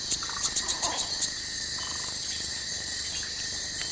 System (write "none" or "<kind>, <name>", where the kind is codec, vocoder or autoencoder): vocoder, BigVGAN v2